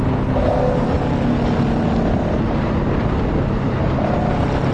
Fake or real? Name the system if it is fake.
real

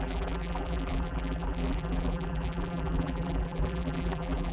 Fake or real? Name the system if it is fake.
fake, vocoder, BigVGAN v2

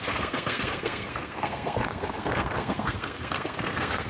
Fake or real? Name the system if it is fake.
fake, codec, SNAC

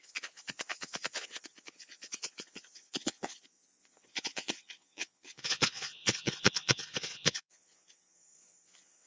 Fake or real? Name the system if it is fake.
fake, vocoder, Vocos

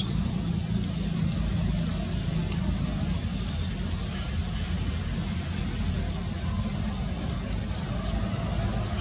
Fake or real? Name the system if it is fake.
real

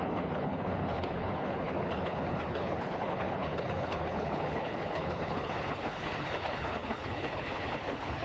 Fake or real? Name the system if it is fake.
fake, codec, HILCodec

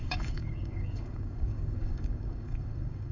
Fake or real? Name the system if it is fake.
fake, codec, DAC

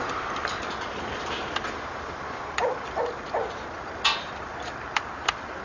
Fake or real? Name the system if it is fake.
fake, vocoder, BigVGAN v2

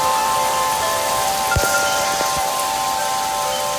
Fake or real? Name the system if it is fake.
fake, vocoder, BigVGAN v2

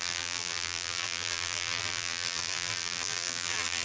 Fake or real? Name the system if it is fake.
fake, vocoder, BigVGAN v2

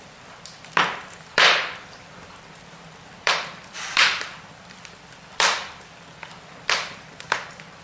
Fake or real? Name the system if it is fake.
fake, vocoder, BigVGAN v2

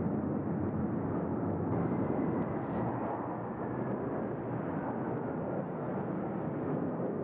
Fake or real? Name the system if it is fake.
real